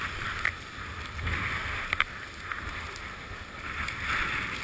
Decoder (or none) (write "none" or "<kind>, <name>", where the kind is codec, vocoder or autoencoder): none